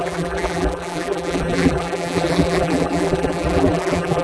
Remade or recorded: remade